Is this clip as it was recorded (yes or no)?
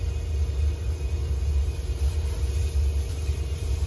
yes